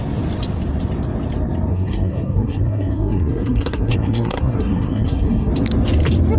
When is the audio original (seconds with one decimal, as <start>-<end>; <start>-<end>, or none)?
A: 0.0-1.7; 5.5-6.4